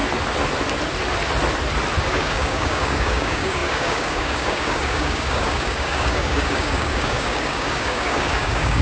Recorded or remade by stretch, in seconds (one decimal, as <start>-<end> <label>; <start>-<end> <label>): 0.0-2.0 recorded; 2.0-8.8 remade